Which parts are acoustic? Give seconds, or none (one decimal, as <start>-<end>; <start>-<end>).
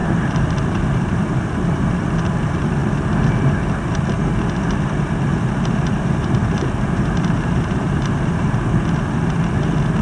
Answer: 2.0-5.3; 8.1-10.0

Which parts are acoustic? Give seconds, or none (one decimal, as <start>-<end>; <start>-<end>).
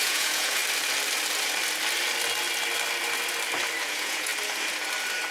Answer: 0.6-3.8; 4.3-5.3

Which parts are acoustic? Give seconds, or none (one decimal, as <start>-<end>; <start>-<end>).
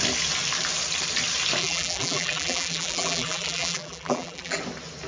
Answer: 0.0-1.6; 4.6-5.1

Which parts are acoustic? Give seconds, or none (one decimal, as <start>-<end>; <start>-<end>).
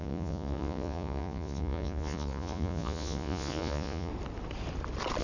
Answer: 4.1-5.2